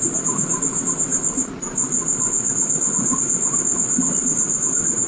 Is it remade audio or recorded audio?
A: remade